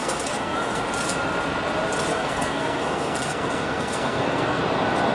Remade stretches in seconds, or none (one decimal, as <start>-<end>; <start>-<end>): 0.0-0.8; 2.1-4.6